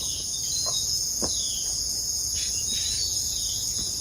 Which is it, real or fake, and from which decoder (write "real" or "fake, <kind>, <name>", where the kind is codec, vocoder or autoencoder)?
fake, vocoder, Vocos